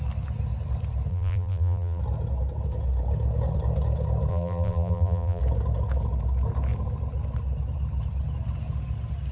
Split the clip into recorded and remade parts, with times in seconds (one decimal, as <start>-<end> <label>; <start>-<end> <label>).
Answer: 0.0-1.1 recorded; 1.1-2.0 remade; 2.0-4.3 recorded; 4.3-5.4 remade; 5.4-9.3 recorded